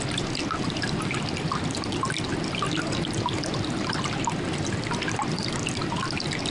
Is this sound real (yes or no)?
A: yes